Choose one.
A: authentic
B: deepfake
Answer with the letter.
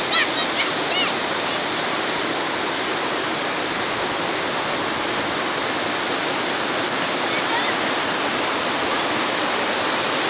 A